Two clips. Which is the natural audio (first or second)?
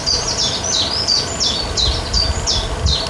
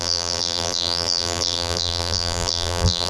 first